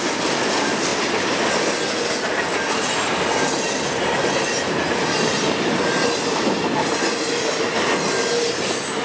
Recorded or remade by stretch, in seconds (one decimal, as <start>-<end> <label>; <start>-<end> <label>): 0.0-9.0 recorded